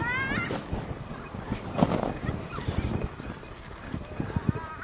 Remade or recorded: recorded